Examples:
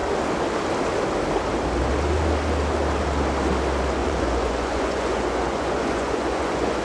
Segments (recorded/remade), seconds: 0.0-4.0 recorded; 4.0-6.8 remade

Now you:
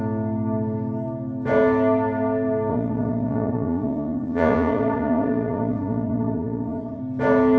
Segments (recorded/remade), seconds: 0.0-2.7 recorded; 2.7-7.0 remade; 7.0-7.6 recorded

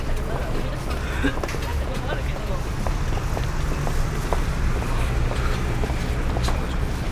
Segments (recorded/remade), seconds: 0.0-1.7 recorded; 1.7-2.5 remade; 2.5-7.1 recorded

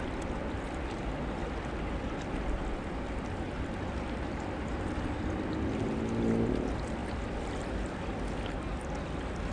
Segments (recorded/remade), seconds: 0.0-9.5 recorded

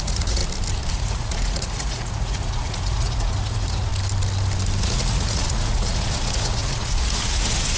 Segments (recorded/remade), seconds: 0.0-0.4 remade; 0.4-0.9 recorded; 0.9-3.9 remade; 3.9-4.8 recorded; 4.8-7.8 remade

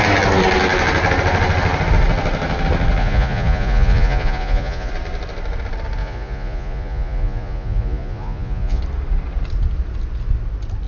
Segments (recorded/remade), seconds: 0.0-3.0 recorded; 3.0-4.9 remade; 4.9-6.0 recorded; 6.0-8.8 remade; 8.8-10.9 recorded